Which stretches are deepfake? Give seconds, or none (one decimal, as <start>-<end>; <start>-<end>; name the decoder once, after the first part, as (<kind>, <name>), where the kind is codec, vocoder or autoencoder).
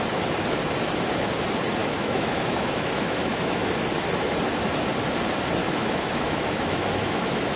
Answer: 1.8-3.7 (autoencoder, DAC-VAE); 5.6-7.6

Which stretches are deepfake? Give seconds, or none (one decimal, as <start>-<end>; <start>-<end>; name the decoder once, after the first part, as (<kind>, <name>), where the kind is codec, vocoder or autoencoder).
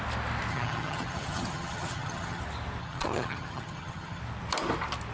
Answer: 0.5-2.4 (vocoder, HiFi-GAN); 2.8-4.2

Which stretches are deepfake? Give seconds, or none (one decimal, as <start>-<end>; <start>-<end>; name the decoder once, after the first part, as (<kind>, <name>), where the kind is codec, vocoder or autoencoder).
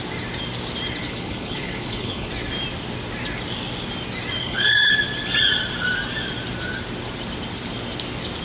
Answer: 1.0-2.3 (codec, HILCodec); 4.4-4.9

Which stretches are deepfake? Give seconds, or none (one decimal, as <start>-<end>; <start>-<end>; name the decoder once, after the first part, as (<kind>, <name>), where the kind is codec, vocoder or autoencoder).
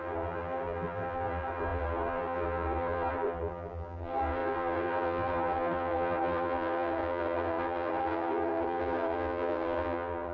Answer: 0.0-10.3 (vocoder, BigVGAN v2)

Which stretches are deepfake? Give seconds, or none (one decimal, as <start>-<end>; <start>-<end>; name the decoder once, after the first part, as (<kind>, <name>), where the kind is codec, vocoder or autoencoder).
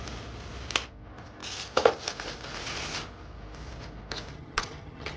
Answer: 4.3-5.2 (vocoder, HiFi-GAN)